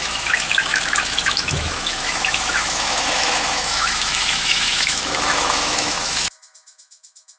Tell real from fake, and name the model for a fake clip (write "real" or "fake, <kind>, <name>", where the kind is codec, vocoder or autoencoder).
fake, autoencoder, DAC-VAE